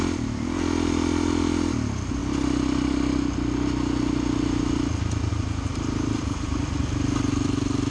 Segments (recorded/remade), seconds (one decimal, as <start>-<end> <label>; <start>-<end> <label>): 0.0-5.7 recorded; 5.7-6.6 remade; 6.6-7.9 recorded